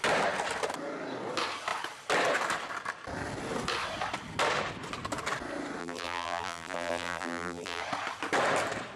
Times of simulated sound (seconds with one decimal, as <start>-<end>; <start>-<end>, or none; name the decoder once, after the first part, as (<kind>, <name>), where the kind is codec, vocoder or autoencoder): 5.8-7.8 (vocoder, BigVGAN v2)